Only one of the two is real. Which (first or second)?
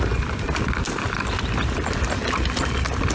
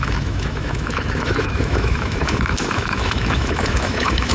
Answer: first